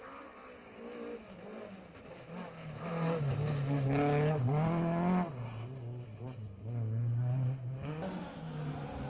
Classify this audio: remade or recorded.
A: recorded